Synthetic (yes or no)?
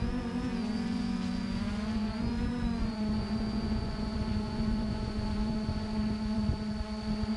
yes